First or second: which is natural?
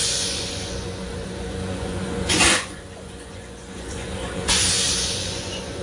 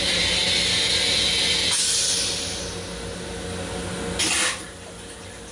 second